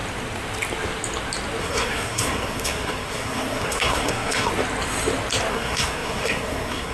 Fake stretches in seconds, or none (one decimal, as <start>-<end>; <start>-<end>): 1.6-4.5; 5.5-6.9